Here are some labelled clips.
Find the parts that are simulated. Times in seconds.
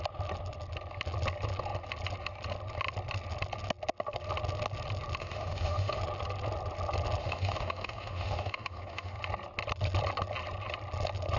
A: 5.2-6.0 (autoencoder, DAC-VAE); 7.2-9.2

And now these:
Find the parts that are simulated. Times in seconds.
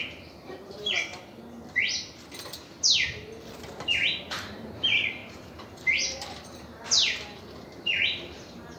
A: 0.0-1.1 (vocoder, BigVGAN v2); 4.2-8.8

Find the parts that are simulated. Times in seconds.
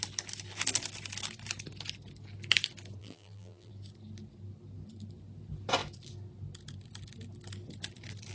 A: 3.0-3.7 (vocoder, BigVGAN v2)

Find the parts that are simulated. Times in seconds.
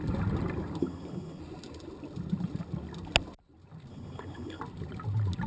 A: 0.8-1.4 (codec, HILCodec); 3.9-4.6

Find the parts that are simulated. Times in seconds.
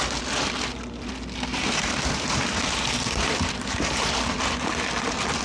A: 1.5-4.7 (vocoder, BigVGAN v2)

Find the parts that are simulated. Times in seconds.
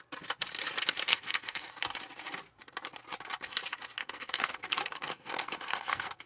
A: 1.1-1.7 (codec, SNAC); 4.0-6.3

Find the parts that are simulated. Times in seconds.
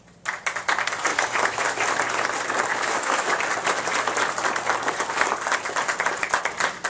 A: 1.1-1.7 (autoencoder, DAC-VAE); 2.7-3.4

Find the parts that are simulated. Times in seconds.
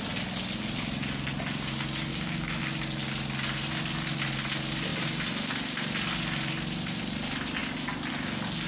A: 2.1-2.6 (codec, DAC)